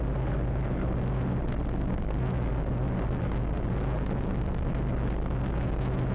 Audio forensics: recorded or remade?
recorded